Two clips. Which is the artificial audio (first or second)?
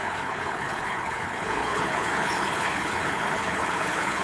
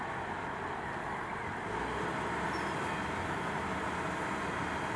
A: first